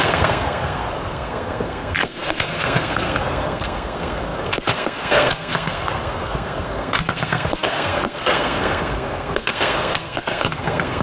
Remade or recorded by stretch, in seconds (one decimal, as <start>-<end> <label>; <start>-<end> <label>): 0.0-11.0 remade